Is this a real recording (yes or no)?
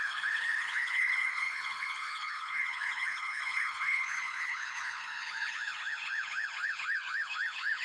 no